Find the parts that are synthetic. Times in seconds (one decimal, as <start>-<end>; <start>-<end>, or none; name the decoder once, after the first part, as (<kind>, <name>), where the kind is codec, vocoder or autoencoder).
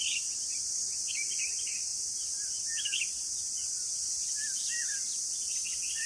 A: 0.0-4.2 (vocoder, BigVGAN v2); 5.3-6.1